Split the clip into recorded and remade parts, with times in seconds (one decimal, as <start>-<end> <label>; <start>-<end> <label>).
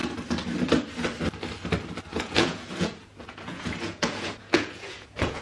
0.0-2.1 recorded; 2.1-5.4 remade